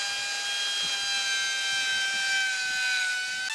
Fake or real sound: real